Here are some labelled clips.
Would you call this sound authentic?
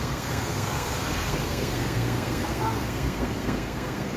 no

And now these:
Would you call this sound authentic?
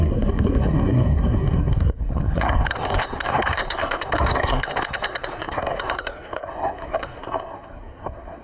no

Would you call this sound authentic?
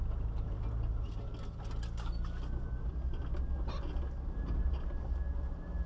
yes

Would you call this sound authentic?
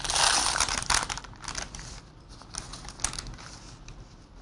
yes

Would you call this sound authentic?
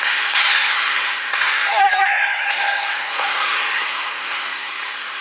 no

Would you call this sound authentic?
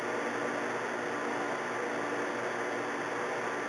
yes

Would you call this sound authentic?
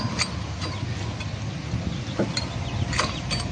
yes